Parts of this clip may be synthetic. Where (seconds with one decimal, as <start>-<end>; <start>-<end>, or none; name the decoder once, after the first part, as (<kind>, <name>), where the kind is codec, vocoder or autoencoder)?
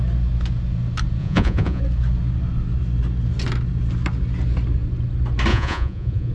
1.2-1.8 (vocoder, Vocos); 5.5-6.3